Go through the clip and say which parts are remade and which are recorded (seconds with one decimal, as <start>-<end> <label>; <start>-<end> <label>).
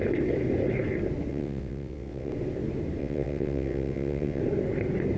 0.0-1.3 recorded; 1.3-2.3 remade; 2.3-3.0 recorded; 3.0-4.4 remade; 4.4-5.2 recorded